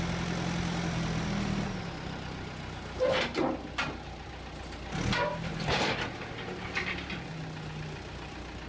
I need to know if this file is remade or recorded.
recorded